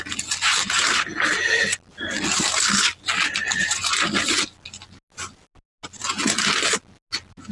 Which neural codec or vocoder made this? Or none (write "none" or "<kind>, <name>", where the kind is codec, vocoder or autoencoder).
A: none